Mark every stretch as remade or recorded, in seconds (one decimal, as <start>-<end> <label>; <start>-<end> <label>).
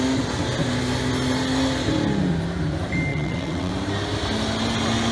0.0-3.1 recorded; 3.1-3.7 remade; 3.7-5.1 recorded